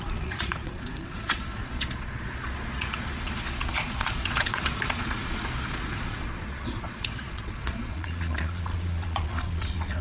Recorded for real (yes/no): no